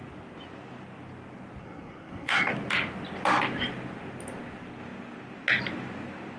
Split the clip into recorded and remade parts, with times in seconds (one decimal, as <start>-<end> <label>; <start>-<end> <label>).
0.0-1.6 recorded; 1.6-2.5 remade; 2.5-6.4 recorded